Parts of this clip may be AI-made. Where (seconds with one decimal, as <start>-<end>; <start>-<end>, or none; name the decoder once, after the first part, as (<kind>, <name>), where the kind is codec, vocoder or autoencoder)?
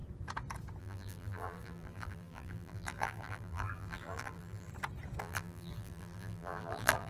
0.8-4.7 (vocoder, BigVGAN v2); 5.2-7.1